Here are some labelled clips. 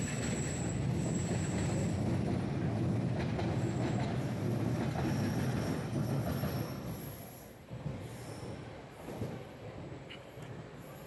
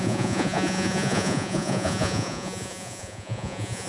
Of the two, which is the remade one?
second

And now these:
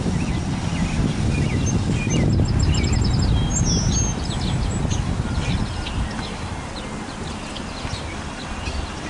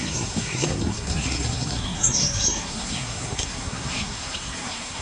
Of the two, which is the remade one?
second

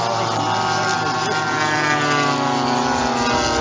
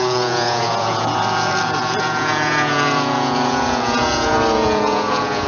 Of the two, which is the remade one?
second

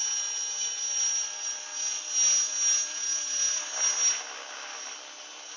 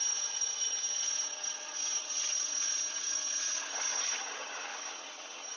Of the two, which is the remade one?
second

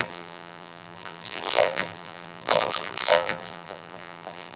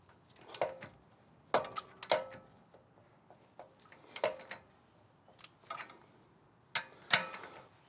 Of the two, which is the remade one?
first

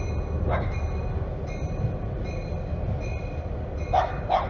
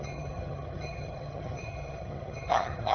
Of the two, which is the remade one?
second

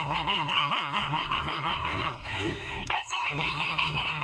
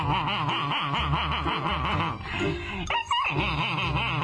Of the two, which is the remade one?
first